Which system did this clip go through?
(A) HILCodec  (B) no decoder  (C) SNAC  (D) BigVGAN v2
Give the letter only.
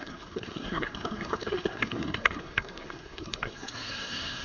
C